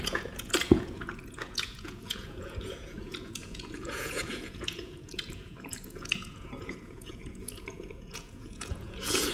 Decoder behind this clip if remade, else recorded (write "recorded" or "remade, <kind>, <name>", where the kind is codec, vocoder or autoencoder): remade, vocoder, Vocos